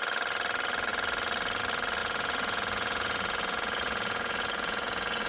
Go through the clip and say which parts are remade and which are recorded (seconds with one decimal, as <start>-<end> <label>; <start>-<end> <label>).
0.0-2.0 recorded; 2.0-5.3 remade